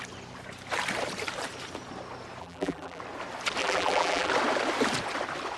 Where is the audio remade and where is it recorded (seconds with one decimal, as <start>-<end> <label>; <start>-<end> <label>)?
0.0-2.4 recorded; 2.4-3.0 remade; 3.0-3.6 recorded; 3.6-4.3 remade; 4.3-5.6 recorded